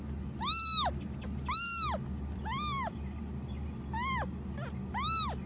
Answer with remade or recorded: recorded